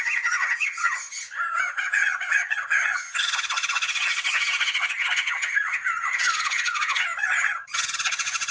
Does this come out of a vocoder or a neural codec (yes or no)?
yes